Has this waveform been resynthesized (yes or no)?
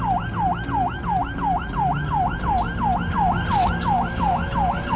no